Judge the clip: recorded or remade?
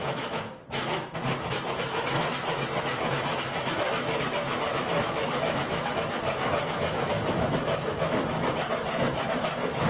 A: remade